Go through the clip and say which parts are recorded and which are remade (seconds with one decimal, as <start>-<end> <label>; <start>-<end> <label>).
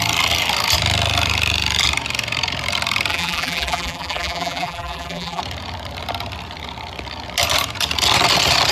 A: 0.0-3.1 recorded; 3.1-5.4 remade; 5.4-8.7 recorded